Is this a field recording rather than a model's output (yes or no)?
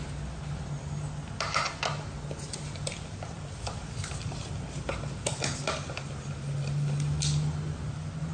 yes